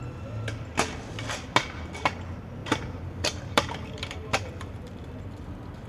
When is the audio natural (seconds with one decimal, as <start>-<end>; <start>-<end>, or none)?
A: 0.0-2.6; 4.9-5.9